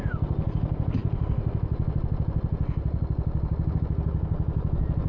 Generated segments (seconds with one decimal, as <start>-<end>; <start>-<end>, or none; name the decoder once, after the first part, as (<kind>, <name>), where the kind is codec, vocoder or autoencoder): none